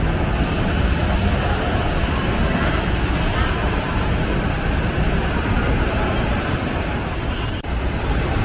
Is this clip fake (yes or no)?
yes